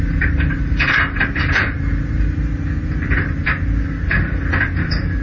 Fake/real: real